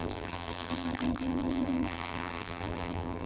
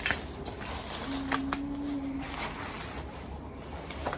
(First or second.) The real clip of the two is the second